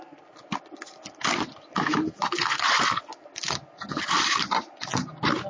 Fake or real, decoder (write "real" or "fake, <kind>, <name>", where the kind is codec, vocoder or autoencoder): real